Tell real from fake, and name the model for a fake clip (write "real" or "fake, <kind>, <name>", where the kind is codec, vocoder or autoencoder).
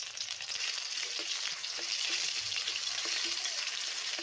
fake, vocoder, BigVGAN v2